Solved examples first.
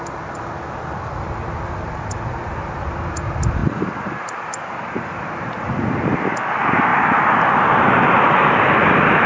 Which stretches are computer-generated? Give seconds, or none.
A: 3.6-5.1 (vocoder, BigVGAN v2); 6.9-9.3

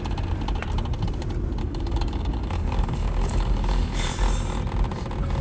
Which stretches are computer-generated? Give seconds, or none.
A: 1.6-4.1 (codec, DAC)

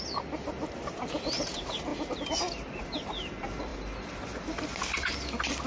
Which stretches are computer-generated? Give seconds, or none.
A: none

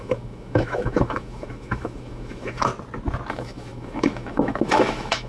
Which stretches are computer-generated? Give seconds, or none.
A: 0.0-2.7 (autoencoder, DAC-VAE); 3.3-5.3

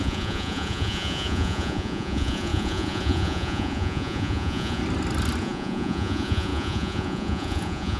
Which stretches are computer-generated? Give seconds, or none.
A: 0.0-4.8 (vocoder, Vocos); 5.4-8.0

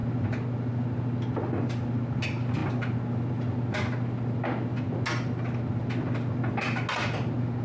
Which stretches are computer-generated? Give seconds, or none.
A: none

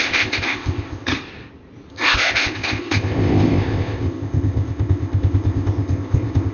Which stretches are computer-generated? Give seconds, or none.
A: 0.0-1.1 (codec, ZipCodec); 1.9-6.5

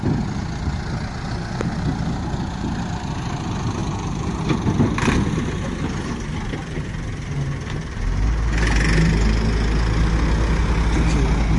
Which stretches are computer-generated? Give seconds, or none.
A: 3.8-4.4 (vocoder, BigVGAN v2)